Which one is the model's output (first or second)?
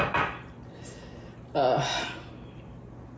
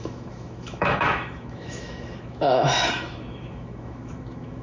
second